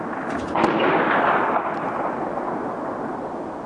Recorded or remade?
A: recorded